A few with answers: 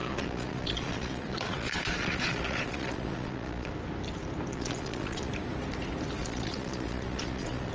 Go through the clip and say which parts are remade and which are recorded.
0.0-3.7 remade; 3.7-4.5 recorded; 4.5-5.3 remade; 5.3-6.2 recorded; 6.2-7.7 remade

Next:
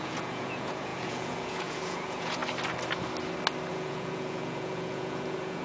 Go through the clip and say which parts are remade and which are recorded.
0.0-2.4 remade; 2.4-3.7 recorded; 3.7-5.6 remade

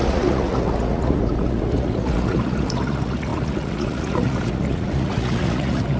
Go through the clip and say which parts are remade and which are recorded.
0.0-6.0 remade

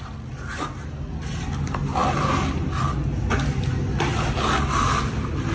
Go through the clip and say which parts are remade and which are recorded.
0.0-5.5 recorded